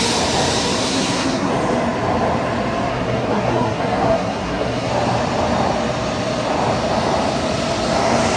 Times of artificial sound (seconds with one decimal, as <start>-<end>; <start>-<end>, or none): 0.8-1.5; 2.9-4.9